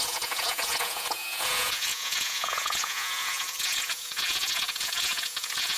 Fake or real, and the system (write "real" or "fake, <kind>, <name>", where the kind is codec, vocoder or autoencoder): fake, vocoder, Vocos